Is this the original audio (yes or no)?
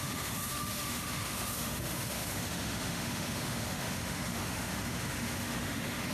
no